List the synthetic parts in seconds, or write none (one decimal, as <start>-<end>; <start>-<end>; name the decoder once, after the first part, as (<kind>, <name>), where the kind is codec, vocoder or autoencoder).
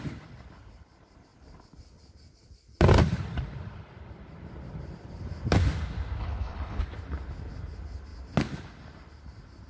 6.2-6.8 (codec, HILCodec)